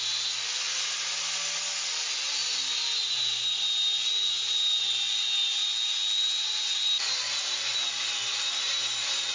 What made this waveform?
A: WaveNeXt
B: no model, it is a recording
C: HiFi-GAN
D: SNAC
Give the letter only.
B